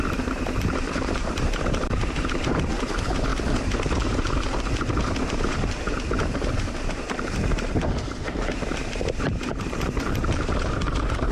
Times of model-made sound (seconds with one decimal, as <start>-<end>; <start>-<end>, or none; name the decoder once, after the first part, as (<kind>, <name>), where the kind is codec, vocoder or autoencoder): 0.0-3.3 (vocoder, BigVGAN v2); 4.2-11.3